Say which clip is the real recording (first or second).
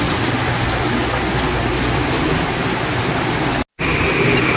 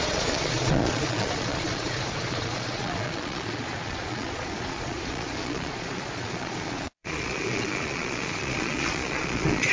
first